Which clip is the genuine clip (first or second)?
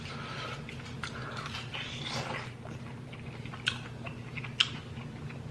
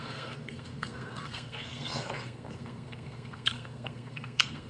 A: first